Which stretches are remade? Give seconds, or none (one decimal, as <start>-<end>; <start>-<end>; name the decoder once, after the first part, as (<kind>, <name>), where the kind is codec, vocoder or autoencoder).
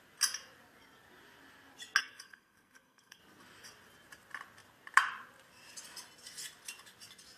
2.0-3.2 (codec, SNAC)